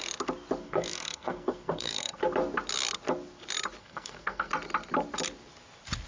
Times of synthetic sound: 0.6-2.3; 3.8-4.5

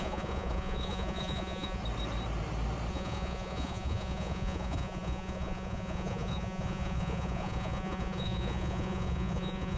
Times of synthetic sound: 0.0-1.8; 2.9-9.8

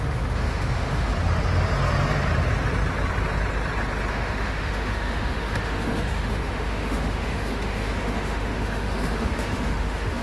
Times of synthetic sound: 0.0-1.1; 4.1-10.2

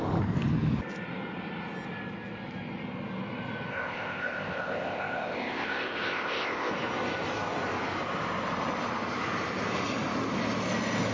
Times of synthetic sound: 3.7-6.7

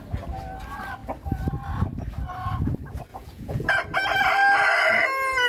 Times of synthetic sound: 3.1-3.7

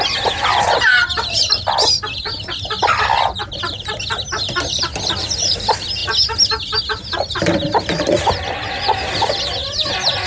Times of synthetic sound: 0.0-6.0; 6.8-9.6